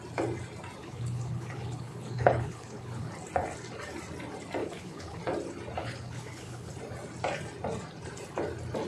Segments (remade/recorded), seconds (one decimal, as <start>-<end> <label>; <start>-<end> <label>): 0.0-0.8 recorded; 0.8-3.1 remade; 3.1-4.6 recorded; 4.6-5.2 remade; 5.2-5.8 recorded; 5.8-6.7 remade; 6.7-8.9 recorded